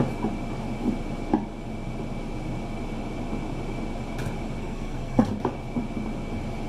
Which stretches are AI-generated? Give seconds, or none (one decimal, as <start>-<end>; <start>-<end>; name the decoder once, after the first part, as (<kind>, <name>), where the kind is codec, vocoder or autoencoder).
4.6-5.3 (codec, SNAC)